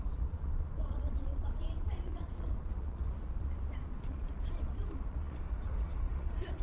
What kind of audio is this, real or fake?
fake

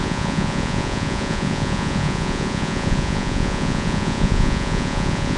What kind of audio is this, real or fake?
fake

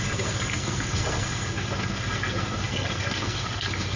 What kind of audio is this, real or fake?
fake